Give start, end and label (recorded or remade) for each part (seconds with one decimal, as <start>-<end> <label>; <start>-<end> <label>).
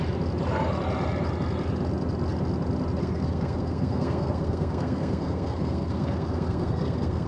0.0-3.0 recorded; 3.0-7.3 remade